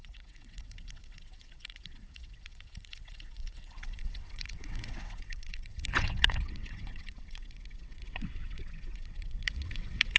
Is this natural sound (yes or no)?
no